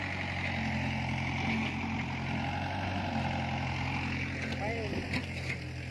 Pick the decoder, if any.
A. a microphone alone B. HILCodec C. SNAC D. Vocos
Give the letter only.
A